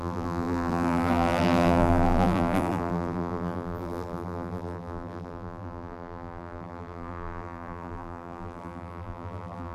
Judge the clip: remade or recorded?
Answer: remade